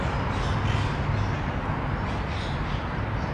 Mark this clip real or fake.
real